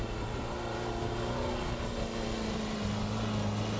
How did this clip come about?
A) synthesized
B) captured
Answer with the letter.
B